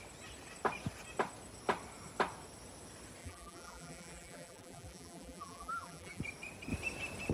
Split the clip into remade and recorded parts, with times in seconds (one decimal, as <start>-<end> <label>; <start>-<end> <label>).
0.0-3.2 recorded; 3.2-6.2 remade; 6.2-7.3 recorded